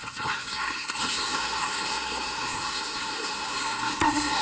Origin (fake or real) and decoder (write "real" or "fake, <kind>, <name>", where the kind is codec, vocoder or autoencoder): fake, codec, SNAC